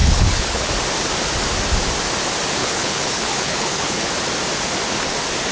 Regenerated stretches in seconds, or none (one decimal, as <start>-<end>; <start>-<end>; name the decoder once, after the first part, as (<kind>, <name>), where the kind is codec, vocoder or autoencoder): 0.0-0.7 (codec, HILCodec); 2.6-4.1

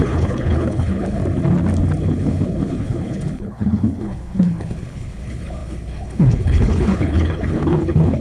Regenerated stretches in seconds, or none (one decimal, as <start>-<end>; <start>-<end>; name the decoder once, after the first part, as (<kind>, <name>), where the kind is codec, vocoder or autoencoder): 0.0-1.2 (codec, HILCodec); 2.0-8.2